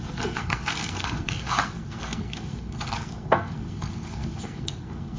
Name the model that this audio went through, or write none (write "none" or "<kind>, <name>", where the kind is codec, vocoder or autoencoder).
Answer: codec, SNAC